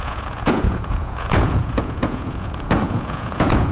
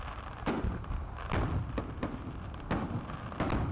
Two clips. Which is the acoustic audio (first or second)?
second